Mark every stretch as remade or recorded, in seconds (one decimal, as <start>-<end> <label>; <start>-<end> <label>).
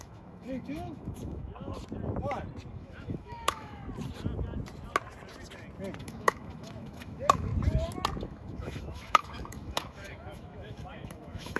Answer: 0.0-1.7 remade; 1.7-2.7 recorded; 2.7-3.8 remade; 3.8-6.0 recorded; 6.0-7.5 remade; 7.5-8.2 recorded; 8.2-11.6 remade